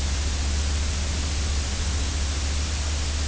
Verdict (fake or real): real